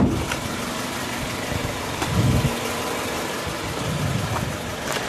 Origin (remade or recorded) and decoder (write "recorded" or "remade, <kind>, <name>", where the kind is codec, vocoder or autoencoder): remade, vocoder, BigVGAN v2